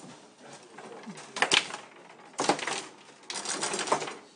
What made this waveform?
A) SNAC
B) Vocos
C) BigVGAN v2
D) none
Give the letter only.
D